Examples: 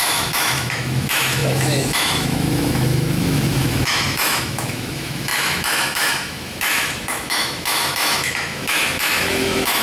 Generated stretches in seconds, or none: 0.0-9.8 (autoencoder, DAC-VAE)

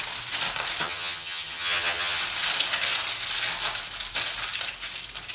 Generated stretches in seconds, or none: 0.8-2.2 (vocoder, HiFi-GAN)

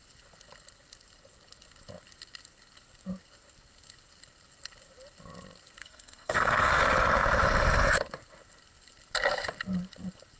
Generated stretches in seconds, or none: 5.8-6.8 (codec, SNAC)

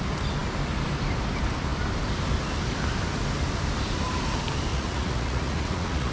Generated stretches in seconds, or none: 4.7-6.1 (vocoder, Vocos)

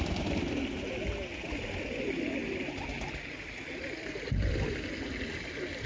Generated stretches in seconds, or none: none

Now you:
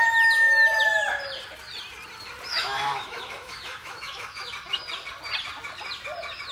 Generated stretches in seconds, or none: 2.6-4.5 (autoencoder, DAC-VAE)